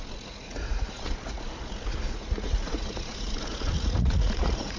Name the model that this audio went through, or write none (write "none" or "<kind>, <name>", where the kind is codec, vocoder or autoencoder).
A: vocoder, Vocos